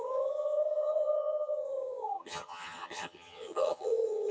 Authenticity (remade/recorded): remade